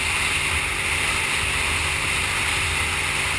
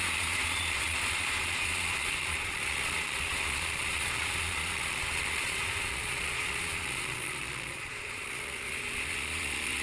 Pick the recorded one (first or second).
first